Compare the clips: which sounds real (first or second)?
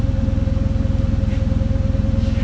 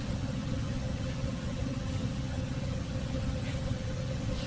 first